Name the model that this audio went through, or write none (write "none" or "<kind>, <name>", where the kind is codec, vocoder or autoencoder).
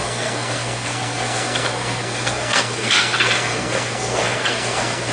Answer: codec, SNAC